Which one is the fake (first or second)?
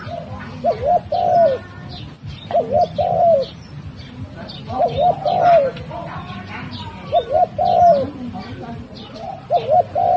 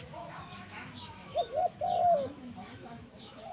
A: second